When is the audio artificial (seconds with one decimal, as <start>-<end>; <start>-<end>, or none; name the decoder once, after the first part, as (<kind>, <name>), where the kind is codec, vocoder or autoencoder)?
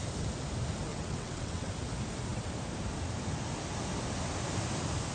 0.9-1.7 (vocoder, WaveNeXt)